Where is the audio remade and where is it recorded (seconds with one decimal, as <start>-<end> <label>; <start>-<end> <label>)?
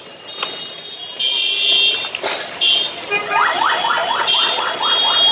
0.0-5.3 recorded